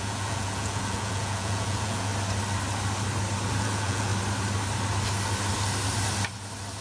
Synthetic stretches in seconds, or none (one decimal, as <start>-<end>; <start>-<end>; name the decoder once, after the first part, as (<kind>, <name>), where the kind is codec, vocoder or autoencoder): 0.0-2.1 (vocoder, Vocos); 3.6-4.1